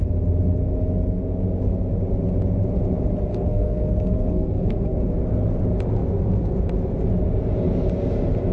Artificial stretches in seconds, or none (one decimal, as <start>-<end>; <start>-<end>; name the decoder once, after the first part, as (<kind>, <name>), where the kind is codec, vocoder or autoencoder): 3.3-5.0 (codec, SNAC)